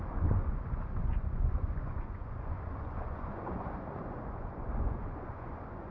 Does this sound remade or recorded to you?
remade